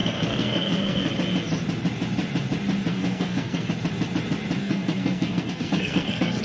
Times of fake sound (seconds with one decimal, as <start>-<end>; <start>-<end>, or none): 0.0-1.1; 2.9-3.7; 4.6-6.4

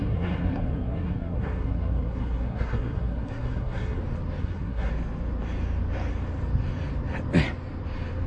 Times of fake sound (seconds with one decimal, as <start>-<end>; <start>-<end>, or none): 0.0-4.0; 4.4-4.9

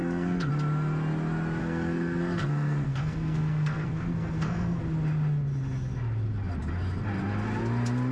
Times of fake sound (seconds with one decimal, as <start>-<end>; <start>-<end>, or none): 0.0-0.5; 1.6-4.8

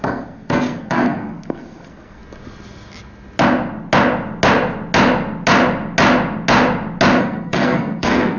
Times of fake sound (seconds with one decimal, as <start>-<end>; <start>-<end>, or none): 0.0-2.2; 7.2-8.4

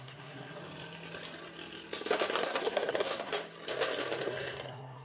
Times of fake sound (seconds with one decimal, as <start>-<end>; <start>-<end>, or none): 0.0-0.6; 2.3-3.3; 4.2-5.0

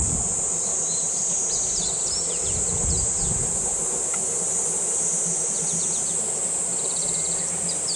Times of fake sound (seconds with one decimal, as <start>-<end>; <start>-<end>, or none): none